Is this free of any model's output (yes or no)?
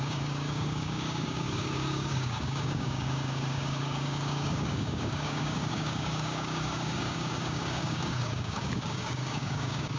no